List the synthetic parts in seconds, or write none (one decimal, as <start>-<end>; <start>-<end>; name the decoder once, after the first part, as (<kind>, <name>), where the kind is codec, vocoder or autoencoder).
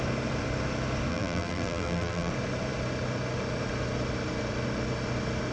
1.1-2.3 (vocoder, BigVGAN v2)